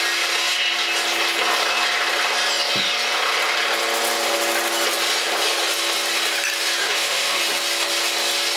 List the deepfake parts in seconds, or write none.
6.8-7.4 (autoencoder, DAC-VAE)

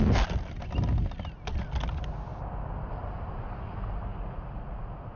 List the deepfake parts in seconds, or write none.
4.1-4.7 (vocoder, Vocos)